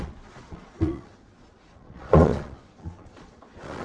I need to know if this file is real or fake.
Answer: fake